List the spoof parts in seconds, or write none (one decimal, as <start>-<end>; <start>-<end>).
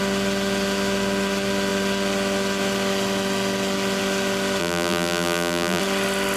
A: 4.6-5.8